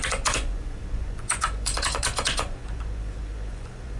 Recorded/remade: remade